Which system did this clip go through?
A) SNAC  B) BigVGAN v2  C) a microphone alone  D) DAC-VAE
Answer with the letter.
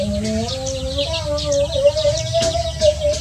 C